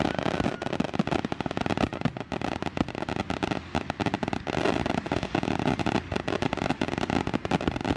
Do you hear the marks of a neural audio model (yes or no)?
no